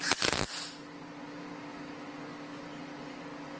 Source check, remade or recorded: recorded